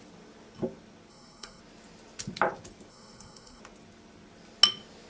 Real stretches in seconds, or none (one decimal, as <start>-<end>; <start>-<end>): 0.0-1.1; 1.6-2.9; 3.6-5.1